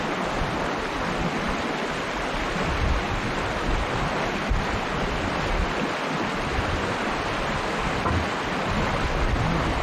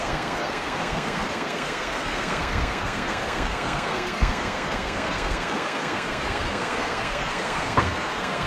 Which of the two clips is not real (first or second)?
second